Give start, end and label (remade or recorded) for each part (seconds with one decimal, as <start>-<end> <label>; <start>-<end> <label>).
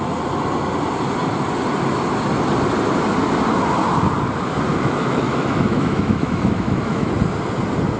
0.0-4.7 recorded; 4.7-7.1 remade; 7.1-8.0 recorded